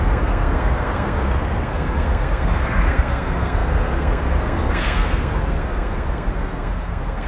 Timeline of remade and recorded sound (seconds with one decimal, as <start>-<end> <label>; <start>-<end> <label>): 0.0-7.3 remade